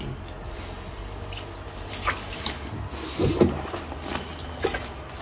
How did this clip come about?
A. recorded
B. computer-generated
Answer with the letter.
A